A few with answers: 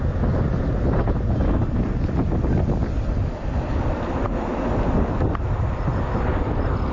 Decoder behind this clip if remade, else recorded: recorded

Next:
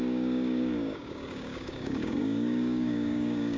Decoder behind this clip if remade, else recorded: remade, codec, DAC